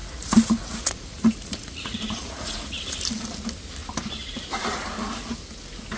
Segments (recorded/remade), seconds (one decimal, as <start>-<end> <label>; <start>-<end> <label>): 0.0-2.8 remade; 2.8-6.0 recorded